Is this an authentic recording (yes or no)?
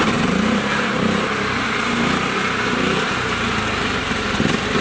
no